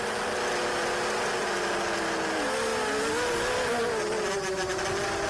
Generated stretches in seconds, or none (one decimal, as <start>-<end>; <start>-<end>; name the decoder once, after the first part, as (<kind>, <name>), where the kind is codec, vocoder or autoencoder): none